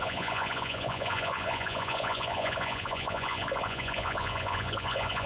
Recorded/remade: remade